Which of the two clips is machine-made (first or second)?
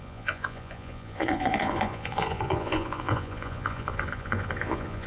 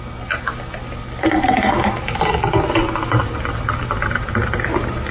first